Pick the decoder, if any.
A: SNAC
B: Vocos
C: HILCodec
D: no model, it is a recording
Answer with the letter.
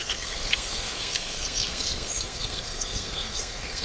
A